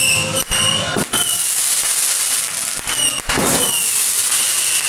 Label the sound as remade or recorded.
recorded